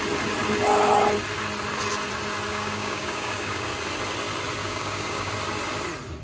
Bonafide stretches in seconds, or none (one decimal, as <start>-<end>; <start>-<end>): 0.0-2.5; 3.7-4.6; 5.3-6.2